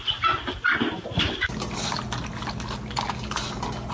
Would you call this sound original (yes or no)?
yes